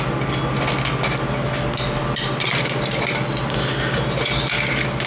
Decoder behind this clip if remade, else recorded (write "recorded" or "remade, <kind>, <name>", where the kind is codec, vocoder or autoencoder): recorded